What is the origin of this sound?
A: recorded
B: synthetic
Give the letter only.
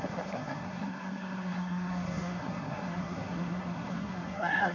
B